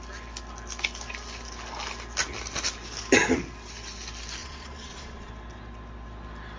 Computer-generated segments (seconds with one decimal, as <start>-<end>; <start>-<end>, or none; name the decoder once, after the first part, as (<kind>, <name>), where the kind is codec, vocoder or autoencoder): 4.4-5.3 (vocoder, Vocos)